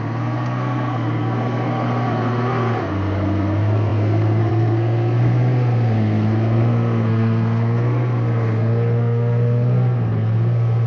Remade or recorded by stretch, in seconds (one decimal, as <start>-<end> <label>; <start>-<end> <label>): 0.0-10.9 remade